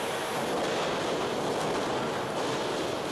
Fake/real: real